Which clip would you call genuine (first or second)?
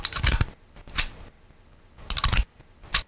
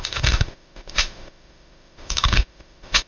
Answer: first